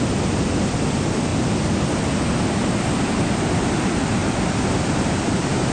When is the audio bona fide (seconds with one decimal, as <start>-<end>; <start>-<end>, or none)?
0.0-4.2